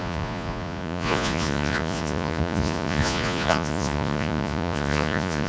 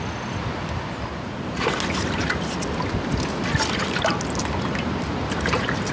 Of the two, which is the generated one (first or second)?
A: first